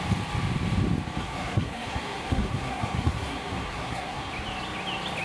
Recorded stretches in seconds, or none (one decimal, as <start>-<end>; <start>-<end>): 0.0-1.2; 4.3-5.2

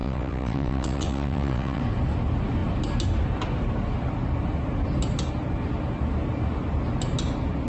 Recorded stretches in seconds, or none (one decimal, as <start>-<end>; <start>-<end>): 1.8-7.7

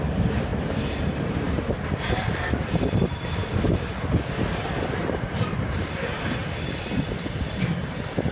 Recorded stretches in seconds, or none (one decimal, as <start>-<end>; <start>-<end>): 6.4-8.3

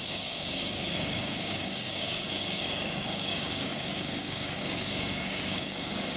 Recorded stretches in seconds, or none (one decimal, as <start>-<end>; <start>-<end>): none